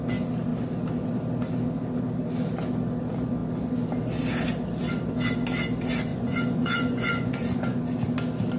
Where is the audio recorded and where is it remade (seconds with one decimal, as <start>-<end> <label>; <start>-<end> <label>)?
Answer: 0.0-6.1 recorded; 6.1-7.8 remade; 7.8-8.6 recorded

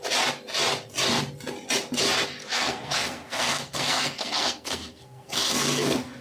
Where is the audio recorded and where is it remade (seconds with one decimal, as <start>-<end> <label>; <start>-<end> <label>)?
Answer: 0.0-2.4 recorded; 2.4-6.2 remade

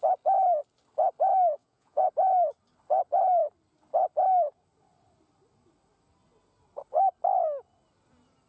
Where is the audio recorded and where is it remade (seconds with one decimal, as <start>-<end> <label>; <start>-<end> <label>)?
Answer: 0.0-1.6 recorded; 1.6-2.1 remade; 2.1-8.5 recorded